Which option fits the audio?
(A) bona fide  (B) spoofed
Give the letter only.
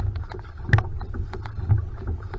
A